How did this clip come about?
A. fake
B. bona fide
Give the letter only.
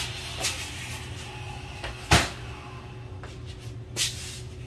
B